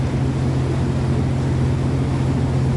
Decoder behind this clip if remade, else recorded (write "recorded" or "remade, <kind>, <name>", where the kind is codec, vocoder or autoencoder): recorded